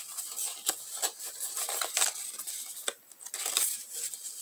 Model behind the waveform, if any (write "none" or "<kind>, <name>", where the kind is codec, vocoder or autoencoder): none